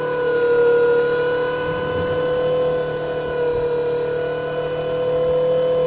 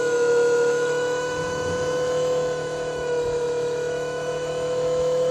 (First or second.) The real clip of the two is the first